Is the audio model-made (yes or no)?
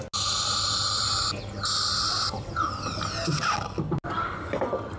no